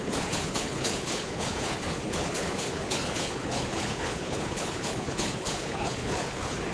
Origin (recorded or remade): remade